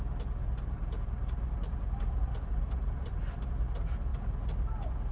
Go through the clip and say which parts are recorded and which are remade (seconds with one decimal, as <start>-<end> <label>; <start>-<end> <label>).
0.0-0.4 recorded; 0.4-3.5 remade; 3.5-5.1 recorded